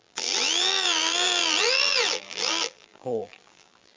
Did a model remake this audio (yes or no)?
yes